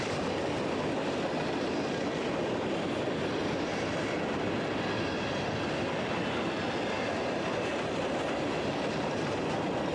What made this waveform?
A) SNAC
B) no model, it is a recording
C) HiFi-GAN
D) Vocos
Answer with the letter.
B